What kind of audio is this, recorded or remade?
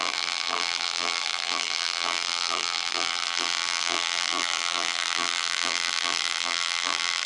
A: remade